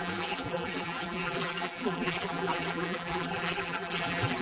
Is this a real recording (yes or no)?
no